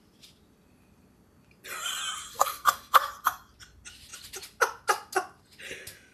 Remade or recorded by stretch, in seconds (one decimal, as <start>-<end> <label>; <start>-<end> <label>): 0.0-2.3 recorded; 2.3-3.0 remade; 3.0-6.1 recorded